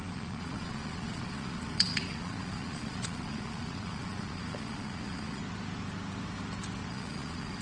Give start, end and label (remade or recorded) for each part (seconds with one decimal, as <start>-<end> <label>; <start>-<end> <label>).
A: 0.0-5.4 remade; 5.4-6.9 recorded; 6.9-7.6 remade